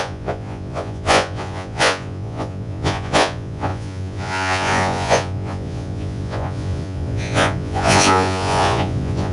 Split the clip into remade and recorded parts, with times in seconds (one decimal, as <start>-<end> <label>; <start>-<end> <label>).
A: 0.0-9.3 remade

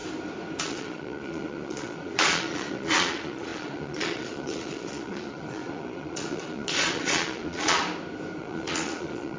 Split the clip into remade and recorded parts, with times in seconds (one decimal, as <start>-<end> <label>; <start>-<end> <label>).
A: 0.0-0.6 recorded; 0.6-7.8 remade; 7.8-8.4 recorded; 8.4-9.4 remade

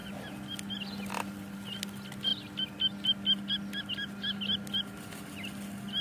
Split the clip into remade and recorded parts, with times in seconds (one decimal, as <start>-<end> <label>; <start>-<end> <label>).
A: 0.0-6.0 recorded